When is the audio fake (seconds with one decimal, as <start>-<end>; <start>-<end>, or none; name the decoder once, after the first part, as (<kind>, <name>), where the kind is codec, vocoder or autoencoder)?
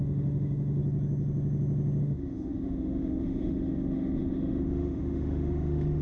0.0-0.8 (autoencoder, DAC-VAE); 2.0-6.0